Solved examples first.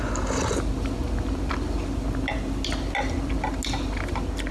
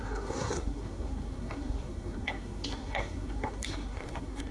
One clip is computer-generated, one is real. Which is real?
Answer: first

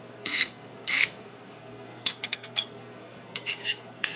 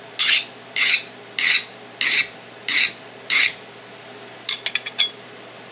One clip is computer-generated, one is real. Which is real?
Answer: second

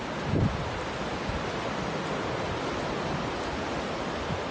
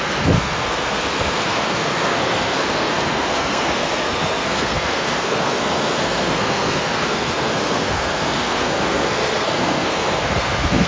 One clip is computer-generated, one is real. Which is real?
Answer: first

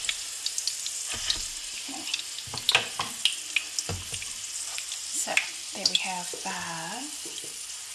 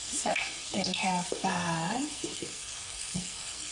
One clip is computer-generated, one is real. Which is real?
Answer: first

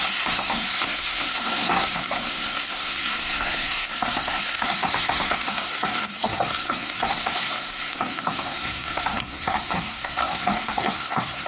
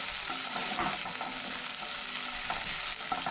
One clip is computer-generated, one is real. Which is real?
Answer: second